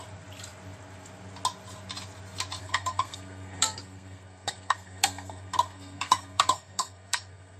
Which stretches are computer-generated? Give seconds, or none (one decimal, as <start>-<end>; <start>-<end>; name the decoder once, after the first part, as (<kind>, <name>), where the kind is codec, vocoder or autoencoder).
2.6-7.6 (codec, SNAC)